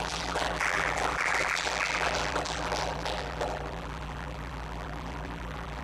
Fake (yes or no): yes